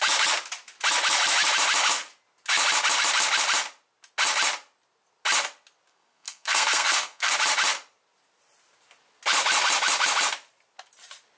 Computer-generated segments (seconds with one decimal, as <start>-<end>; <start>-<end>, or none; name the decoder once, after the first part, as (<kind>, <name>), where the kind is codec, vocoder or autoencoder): 5.9-7.3 (codec, SNAC)